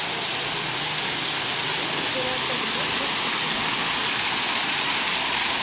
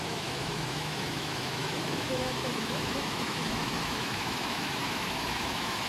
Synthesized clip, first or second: second